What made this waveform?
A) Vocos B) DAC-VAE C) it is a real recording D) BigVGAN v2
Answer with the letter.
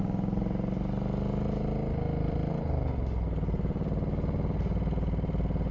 C